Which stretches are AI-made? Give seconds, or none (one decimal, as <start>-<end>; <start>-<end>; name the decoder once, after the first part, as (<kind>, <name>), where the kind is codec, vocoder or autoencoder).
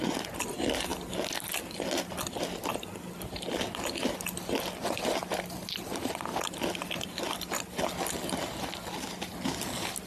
none